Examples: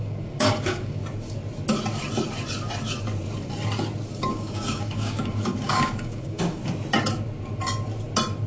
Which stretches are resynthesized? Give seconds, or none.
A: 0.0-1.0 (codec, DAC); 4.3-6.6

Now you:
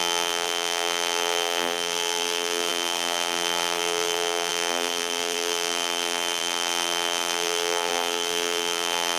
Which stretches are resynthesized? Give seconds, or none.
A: 0.0-9.2 (vocoder, BigVGAN v2)

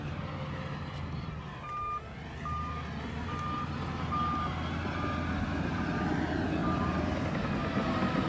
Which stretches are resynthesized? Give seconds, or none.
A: none

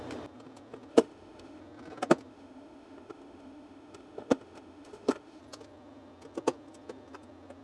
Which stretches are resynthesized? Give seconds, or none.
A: 0.9-1.6 (autoencoder, DAC-VAE); 2.3-5.4

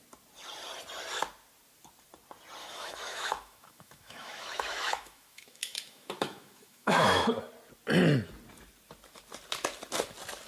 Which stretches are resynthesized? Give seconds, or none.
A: 2.6-7.3 (autoencoder, DAC-VAE)